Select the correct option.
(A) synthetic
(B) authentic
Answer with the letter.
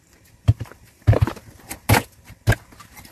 B